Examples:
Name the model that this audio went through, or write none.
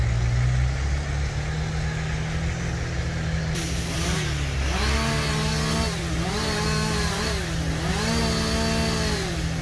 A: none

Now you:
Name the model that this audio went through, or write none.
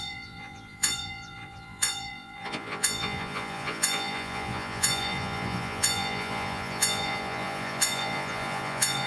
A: vocoder, Vocos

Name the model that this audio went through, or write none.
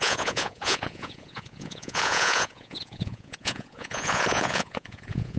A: vocoder, Vocos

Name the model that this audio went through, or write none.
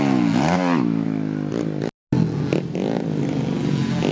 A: none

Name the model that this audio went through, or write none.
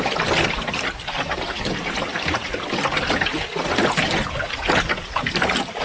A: none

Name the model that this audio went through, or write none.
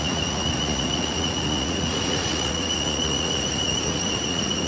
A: vocoder, Vocos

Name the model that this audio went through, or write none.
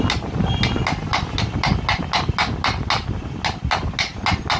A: none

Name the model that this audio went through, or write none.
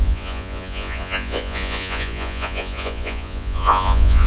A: vocoder, Vocos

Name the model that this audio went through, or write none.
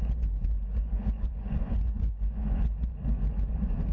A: vocoder, Vocos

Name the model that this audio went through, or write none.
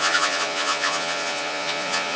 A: vocoder, Vocos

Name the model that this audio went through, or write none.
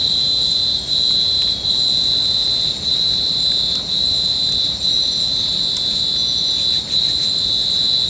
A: none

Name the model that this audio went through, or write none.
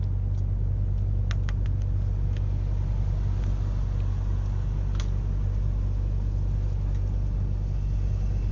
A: none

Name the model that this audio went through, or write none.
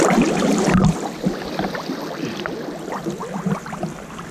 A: none